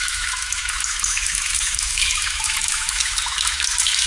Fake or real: fake